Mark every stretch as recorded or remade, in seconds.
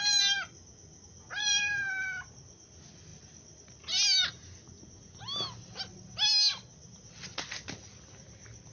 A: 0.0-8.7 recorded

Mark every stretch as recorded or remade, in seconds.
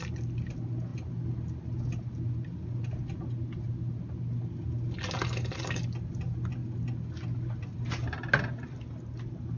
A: 0.0-9.6 recorded